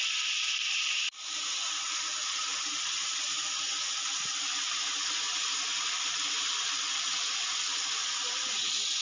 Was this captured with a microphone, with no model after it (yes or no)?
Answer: yes